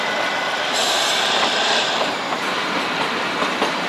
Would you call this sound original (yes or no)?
no